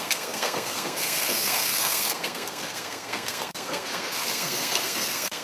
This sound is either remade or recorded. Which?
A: remade